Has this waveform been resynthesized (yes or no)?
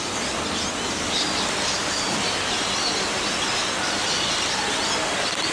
no